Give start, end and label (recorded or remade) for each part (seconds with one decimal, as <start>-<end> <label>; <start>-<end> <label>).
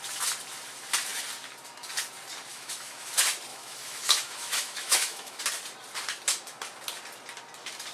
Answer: 0.0-2.5 recorded; 2.5-3.1 remade; 3.1-3.5 recorded; 3.5-5.4 remade; 5.4-7.9 recorded